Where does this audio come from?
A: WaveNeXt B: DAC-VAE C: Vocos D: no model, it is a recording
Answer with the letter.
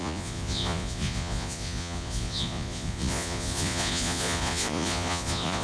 C